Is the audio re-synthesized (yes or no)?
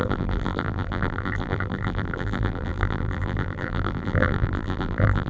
yes